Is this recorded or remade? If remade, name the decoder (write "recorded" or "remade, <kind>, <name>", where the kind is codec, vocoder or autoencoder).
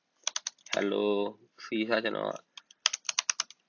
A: recorded